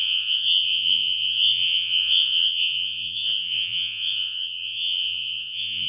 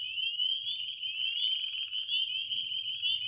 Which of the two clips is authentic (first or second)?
second